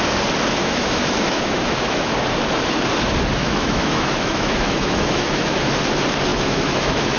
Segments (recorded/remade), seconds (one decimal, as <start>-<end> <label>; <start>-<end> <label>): 0.0-0.6 recorded; 0.6-2.1 remade; 2.1-3.4 recorded; 3.4-5.7 remade; 5.7-6.3 recorded; 6.3-7.2 remade